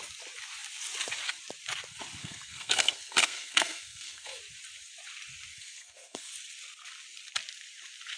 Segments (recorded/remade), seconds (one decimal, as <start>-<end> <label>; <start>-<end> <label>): 0.0-2.2 recorded; 2.2-4.4 remade; 4.4-5.5 recorded; 5.5-6.3 remade; 6.3-8.2 recorded